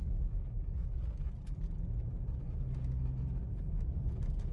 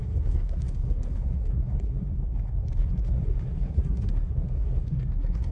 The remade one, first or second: second